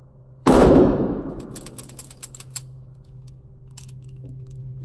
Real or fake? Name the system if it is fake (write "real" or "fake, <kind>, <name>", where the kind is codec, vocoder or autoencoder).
fake, autoencoder, DAC-VAE